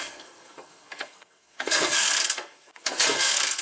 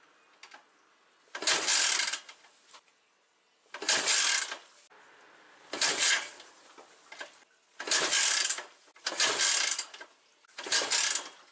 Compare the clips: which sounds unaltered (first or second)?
second